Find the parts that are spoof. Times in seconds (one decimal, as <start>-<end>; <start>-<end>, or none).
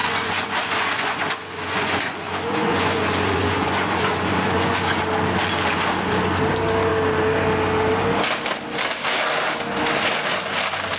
0.0-5.0